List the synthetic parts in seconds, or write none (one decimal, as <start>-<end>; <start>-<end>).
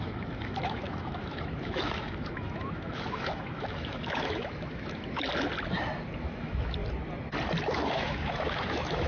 0.0-5.3; 6.2-6.8; 7.6-9.1